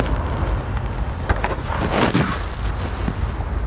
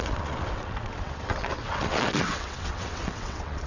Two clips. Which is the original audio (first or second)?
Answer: first